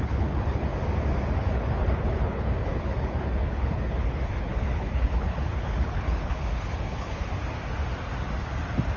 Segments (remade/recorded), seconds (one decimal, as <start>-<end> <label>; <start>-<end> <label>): 0.0-0.7 remade; 0.7-1.3 recorded; 1.3-7.3 remade; 7.3-9.0 recorded